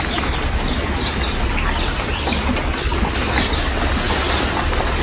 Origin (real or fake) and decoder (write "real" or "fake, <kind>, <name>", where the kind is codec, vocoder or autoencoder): real